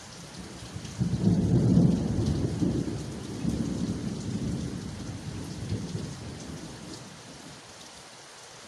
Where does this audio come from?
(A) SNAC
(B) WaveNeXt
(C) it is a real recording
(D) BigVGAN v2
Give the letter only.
D